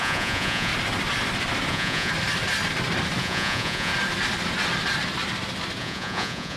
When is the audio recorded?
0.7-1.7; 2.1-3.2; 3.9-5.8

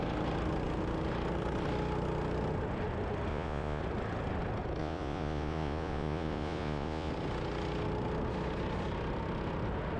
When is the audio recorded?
0.0-3.3; 3.8-4.8; 7.1-10.0